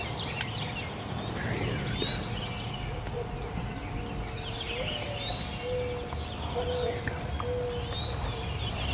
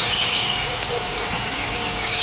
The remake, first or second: second